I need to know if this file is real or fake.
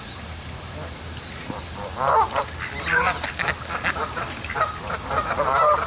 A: real